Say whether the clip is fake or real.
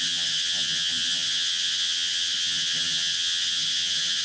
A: fake